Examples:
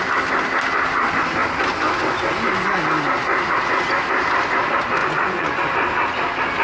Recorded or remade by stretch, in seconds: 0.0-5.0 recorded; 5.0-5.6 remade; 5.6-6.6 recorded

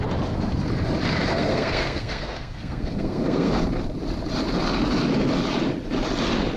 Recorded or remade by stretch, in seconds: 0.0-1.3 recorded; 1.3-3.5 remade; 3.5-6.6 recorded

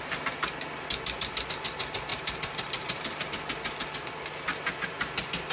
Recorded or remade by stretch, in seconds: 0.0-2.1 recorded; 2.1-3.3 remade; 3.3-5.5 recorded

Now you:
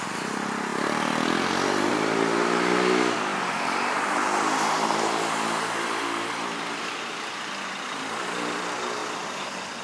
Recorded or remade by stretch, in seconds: 0.0-0.7 remade; 0.7-1.9 recorded; 1.9-9.0 remade; 9.0-9.8 recorded

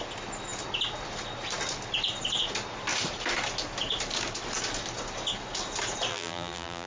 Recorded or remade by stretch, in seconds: 0.0-6.1 recorded; 6.1-6.9 remade

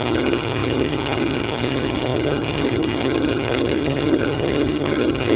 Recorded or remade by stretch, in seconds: 0.0-5.4 remade